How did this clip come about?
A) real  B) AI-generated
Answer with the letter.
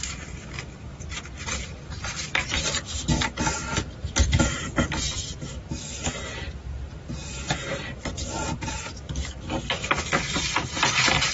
A